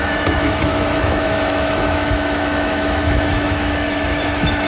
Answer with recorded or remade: remade